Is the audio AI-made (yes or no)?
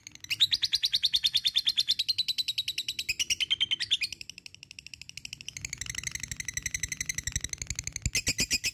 no